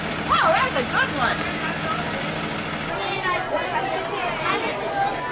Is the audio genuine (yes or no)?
yes